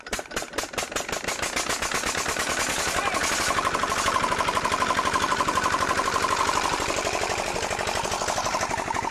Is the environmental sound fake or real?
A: real